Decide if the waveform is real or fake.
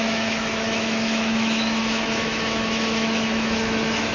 fake